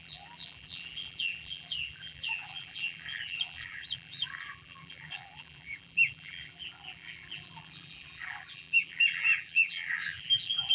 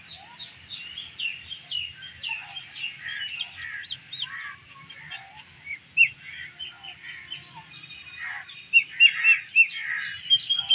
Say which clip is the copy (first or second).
first